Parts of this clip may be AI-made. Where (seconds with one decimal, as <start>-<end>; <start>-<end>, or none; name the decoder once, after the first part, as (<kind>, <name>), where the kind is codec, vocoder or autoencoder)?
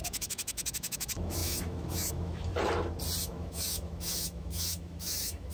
0.0-2.5 (autoencoder, DAC-VAE); 3.2-5.5